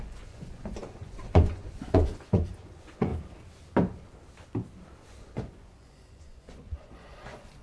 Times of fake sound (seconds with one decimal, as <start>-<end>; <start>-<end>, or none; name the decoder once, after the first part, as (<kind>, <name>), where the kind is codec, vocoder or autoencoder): 0.0-3.1 (vocoder, Vocos); 5.0-7.6